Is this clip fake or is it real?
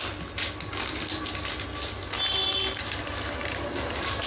real